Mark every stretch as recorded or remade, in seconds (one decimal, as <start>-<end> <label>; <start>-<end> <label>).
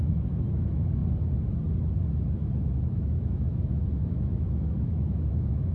0.0-1.0 remade; 1.0-2.3 recorded; 2.3-5.7 remade